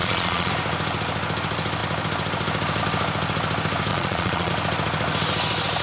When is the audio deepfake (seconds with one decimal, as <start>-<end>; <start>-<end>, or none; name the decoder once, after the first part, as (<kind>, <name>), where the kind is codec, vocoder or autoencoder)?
0.0-0.5 (vocoder, Vocos); 3.9-4.5